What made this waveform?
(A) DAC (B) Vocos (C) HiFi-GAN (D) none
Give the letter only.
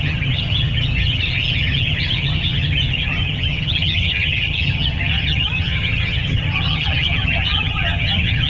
C